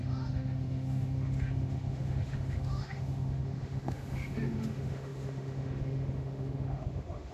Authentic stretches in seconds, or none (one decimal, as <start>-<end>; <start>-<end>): none